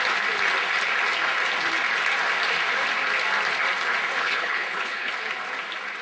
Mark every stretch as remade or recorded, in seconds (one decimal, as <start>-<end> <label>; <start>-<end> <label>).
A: 0.0-4.2 recorded; 4.2-5.1 remade; 5.1-6.0 recorded